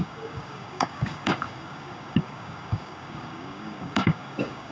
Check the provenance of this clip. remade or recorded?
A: remade